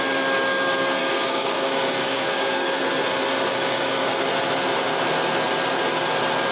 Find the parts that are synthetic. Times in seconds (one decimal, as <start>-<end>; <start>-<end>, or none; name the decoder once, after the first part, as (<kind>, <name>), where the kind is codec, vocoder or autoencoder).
1.0-2.8 (codec, DAC); 3.5-4.1